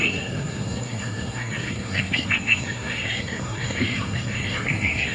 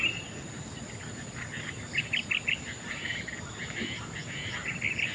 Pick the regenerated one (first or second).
first